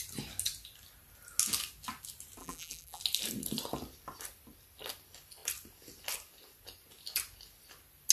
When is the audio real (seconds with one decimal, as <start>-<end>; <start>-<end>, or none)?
0.0-2.4; 3.0-8.1